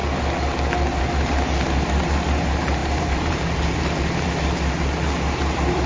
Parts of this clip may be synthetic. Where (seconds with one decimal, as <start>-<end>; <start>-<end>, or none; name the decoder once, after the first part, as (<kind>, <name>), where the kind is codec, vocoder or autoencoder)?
1.0-5.9 (vocoder, BigVGAN v2)